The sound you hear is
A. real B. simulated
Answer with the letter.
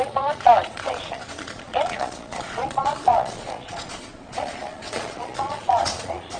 B